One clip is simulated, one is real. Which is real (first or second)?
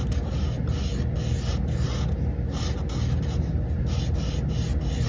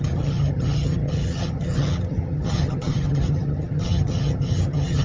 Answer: first